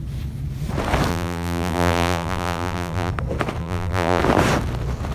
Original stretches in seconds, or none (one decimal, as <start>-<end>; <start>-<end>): 0.0-1.1; 3.1-3.6; 4.2-5.1